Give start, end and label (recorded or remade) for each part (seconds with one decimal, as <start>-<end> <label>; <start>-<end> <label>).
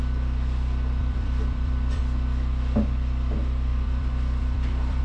0.0-1.0 recorded; 1.0-2.0 remade; 2.0-3.7 recorded; 3.7-5.0 remade